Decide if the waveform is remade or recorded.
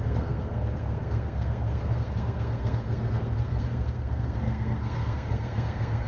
remade